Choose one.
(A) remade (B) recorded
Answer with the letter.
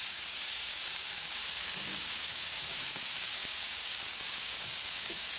A